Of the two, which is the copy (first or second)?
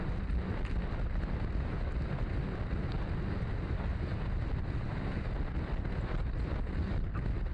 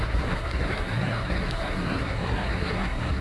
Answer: second